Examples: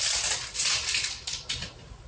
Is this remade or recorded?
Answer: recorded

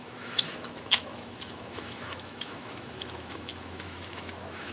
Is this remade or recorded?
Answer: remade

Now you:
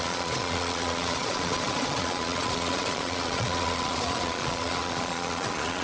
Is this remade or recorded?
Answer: remade